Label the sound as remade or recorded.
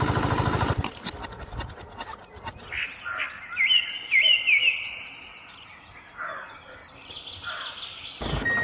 recorded